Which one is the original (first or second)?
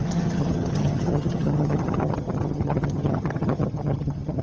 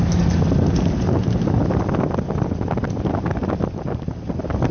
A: second